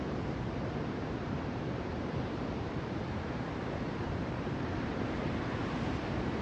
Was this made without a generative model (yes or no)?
no